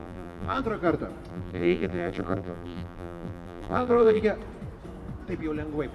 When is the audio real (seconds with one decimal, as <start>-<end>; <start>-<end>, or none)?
0.6-1.3; 4.2-5.9